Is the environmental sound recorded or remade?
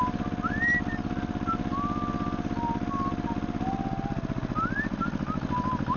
recorded